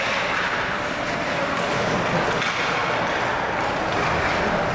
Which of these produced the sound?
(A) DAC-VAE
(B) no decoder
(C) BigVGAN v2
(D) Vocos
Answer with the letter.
B